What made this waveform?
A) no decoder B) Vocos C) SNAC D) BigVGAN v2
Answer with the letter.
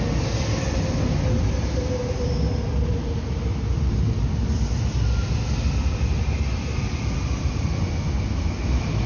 A